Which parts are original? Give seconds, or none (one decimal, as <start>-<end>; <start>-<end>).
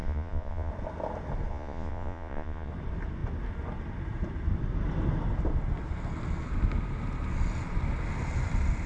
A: 0.7-1.5; 2.7-8.9